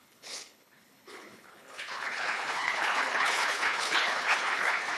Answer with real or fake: fake